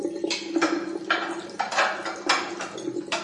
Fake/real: real